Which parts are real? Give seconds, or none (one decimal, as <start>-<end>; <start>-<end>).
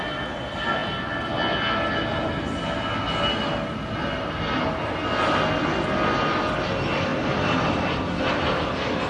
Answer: 0.0-7.1; 7.7-9.1